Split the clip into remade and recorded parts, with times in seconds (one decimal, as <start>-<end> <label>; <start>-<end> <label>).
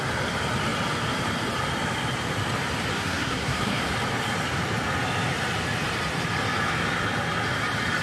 0.0-2.9 recorded; 2.9-3.8 remade; 3.8-8.0 recorded